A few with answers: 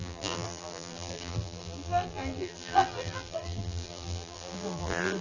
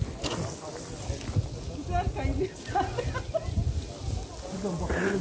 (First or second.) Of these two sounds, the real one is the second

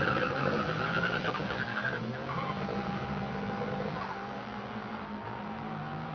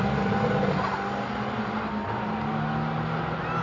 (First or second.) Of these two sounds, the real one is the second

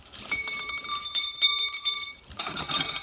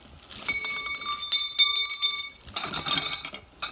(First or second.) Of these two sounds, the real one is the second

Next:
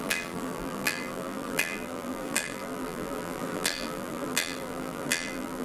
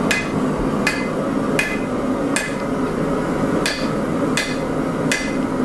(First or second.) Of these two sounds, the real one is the second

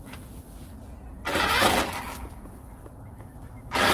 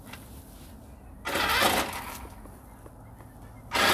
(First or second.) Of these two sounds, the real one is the second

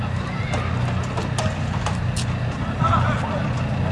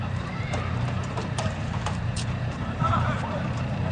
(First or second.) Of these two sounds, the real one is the first